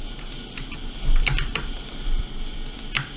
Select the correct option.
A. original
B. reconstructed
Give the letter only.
B